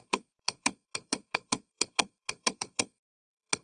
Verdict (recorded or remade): remade